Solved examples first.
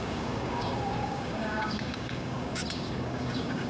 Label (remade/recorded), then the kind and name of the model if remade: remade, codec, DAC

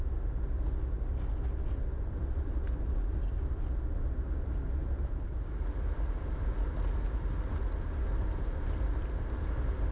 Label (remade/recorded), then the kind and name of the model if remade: recorded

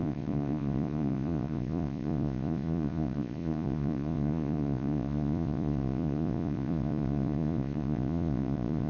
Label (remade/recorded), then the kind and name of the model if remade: remade, vocoder, Vocos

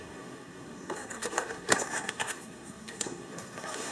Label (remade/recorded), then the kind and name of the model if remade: remade, codec, SNAC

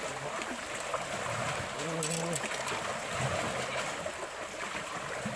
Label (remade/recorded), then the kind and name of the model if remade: recorded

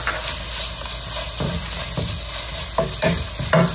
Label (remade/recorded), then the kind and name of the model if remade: recorded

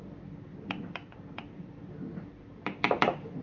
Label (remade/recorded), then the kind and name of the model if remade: remade, vocoder, BigVGAN v2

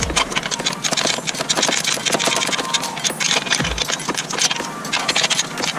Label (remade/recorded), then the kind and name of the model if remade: recorded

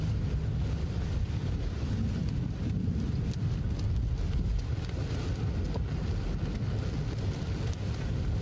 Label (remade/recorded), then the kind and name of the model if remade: recorded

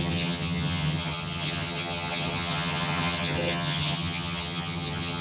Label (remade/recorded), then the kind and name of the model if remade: remade, vocoder, HiFi-GAN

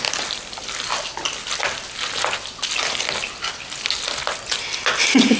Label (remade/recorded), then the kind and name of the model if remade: recorded